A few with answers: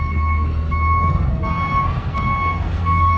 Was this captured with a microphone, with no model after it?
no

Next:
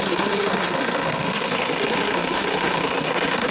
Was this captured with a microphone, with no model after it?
no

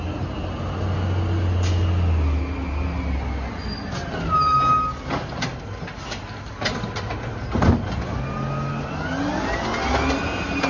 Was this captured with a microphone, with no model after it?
yes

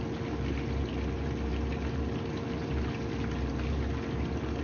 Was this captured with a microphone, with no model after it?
yes